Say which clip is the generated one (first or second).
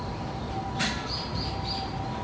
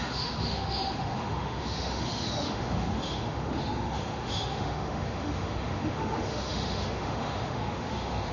second